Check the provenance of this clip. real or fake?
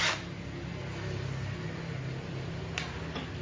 real